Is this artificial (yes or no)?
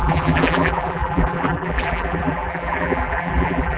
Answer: yes